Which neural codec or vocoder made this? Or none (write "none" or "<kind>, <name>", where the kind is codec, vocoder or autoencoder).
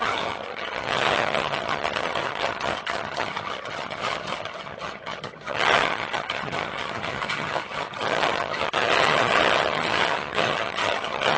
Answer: vocoder, HiFi-GAN